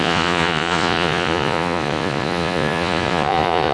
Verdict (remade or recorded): remade